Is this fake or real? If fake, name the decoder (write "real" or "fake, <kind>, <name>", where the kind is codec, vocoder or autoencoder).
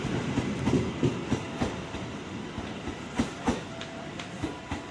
real